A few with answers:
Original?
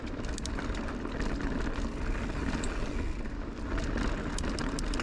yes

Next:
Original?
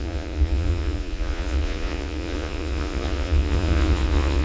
no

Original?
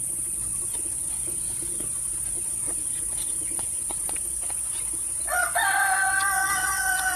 no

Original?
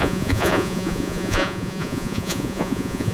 no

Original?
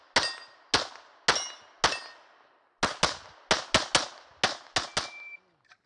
yes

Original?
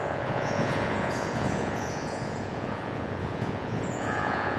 no